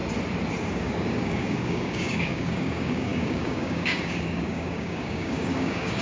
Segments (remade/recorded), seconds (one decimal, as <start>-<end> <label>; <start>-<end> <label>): 0.0-0.7 recorded; 0.7-6.0 remade